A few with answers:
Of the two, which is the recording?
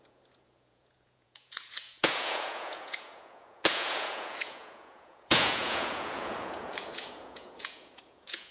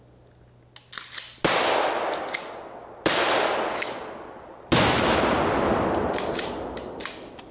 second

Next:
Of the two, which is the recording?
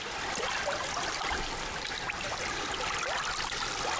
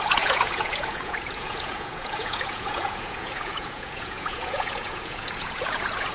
first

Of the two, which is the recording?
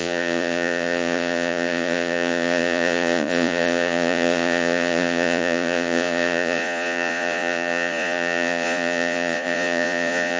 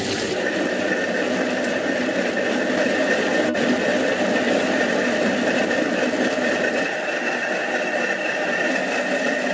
second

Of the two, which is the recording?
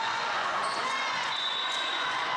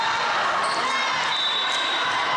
second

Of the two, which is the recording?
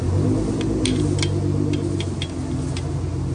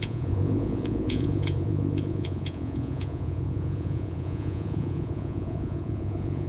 first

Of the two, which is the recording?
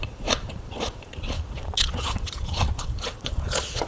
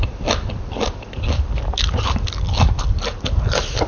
second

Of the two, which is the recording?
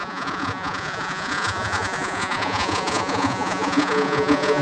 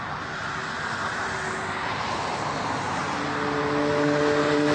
second